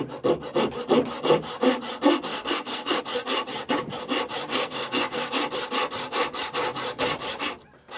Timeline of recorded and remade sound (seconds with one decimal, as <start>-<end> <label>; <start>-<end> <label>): 0.0-2.3 recorded; 2.3-3.0 remade; 3.0-4.5 recorded; 4.5-5.3 remade; 5.3-8.0 recorded